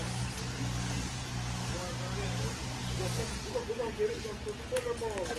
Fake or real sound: real